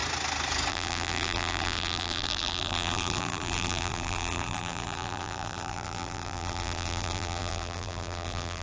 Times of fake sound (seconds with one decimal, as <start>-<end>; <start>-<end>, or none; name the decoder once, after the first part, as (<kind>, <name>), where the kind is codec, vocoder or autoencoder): 0.7-8.6 (vocoder, BigVGAN v2)